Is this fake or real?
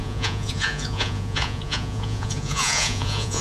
fake